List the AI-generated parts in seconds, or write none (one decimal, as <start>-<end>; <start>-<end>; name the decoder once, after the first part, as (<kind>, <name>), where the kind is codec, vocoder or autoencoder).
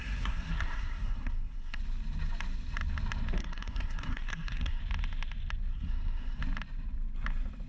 0.0-1.8 (codec, SNAC); 3.4-4.8; 5.7-6.4